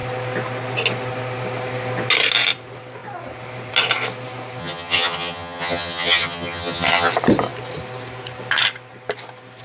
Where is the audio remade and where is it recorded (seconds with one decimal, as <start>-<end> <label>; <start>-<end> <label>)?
0.0-4.6 recorded; 4.6-7.1 remade; 7.1-9.6 recorded